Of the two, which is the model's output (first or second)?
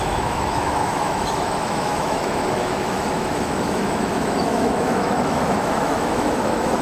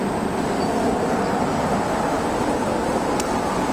first